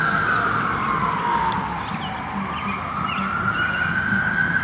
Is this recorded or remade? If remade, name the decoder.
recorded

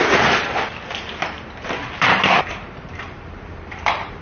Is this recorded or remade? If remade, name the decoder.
remade, vocoder, BigVGAN v2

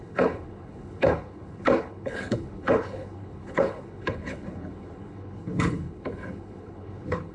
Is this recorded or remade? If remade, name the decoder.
remade, codec, HILCodec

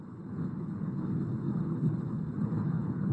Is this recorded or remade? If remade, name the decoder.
remade, codec, HILCodec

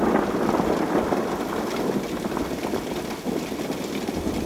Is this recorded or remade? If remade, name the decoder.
recorded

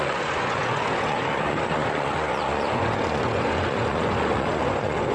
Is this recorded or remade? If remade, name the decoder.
remade, vocoder, Vocos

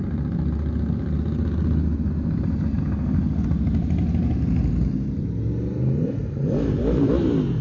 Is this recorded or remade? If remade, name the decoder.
recorded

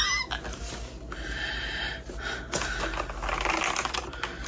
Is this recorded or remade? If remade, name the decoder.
recorded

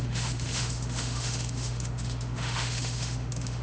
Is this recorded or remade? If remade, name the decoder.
remade, autoencoder, DAC-VAE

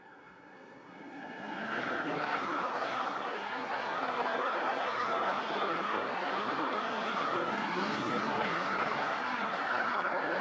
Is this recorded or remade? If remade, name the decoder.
remade, codec, SNAC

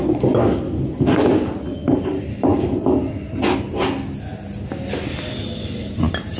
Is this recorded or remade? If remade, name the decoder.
recorded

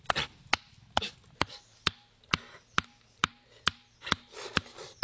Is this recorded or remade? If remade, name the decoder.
recorded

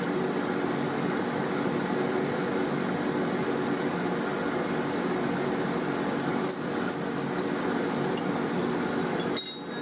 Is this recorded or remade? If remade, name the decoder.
recorded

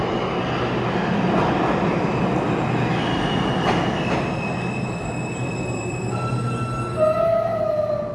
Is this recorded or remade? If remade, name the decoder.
recorded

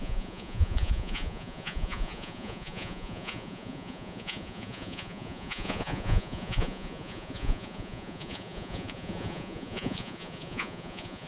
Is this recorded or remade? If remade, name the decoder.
remade, vocoder, Vocos